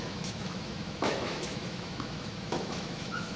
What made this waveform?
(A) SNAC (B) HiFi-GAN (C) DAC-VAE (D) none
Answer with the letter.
C